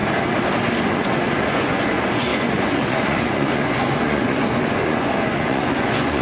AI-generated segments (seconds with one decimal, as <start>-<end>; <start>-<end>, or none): 0.8-6.2